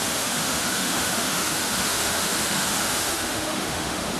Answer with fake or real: fake